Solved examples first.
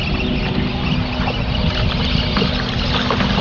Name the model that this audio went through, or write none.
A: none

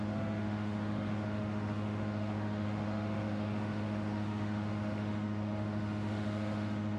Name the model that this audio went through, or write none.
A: autoencoder, DAC-VAE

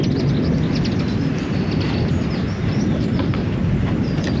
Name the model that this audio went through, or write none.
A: none